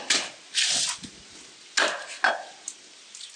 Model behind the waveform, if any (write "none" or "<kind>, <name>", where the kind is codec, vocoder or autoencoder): none